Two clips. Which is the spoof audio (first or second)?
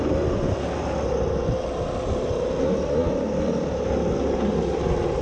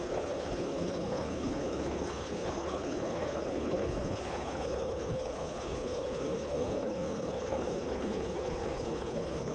second